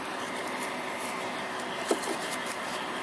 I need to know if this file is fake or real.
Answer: real